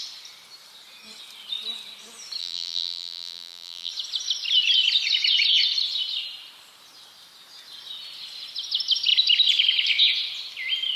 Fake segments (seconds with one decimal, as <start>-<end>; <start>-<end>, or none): 2.4-3.9